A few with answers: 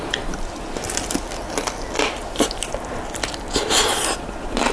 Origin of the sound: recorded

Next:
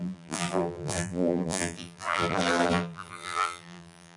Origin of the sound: remade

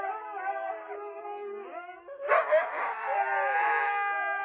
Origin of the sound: recorded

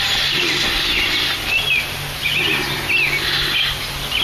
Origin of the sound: recorded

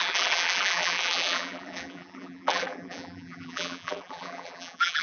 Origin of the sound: remade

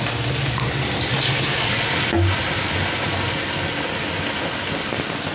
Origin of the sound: recorded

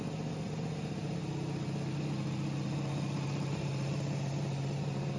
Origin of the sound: recorded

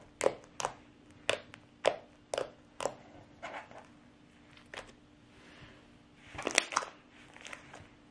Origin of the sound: recorded